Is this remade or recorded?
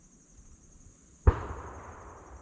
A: recorded